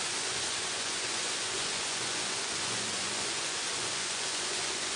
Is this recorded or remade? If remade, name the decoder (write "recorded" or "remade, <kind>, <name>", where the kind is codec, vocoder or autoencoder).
remade, vocoder, Vocos